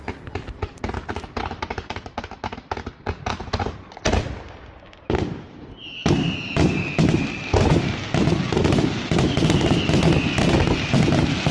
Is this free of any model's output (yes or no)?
yes